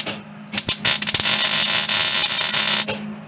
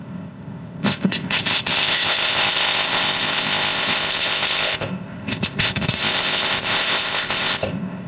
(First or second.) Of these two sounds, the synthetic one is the second